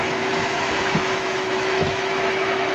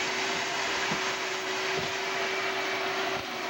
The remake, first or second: first